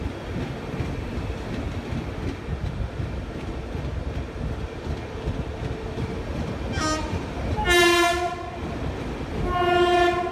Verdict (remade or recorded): recorded